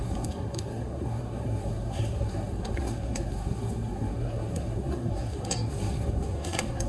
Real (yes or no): no